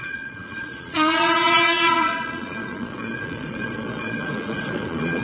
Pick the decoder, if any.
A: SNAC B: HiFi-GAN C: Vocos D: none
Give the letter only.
C